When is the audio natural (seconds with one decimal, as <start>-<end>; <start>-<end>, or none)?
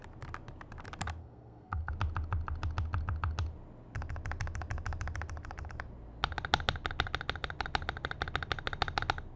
0.0-1.2; 1.9-9.4